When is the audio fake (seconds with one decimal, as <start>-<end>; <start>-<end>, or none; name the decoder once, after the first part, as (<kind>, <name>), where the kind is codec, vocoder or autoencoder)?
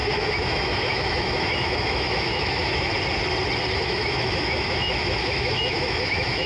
0.0-2.9 (autoencoder, DAC-VAE); 3.8-6.5